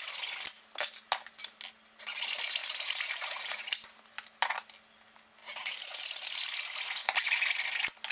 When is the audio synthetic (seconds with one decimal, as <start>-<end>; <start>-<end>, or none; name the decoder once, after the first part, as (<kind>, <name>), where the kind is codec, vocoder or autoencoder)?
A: 2.6-3.6 (vocoder, BigVGAN v2); 5.4-5.9; 7.0-7.6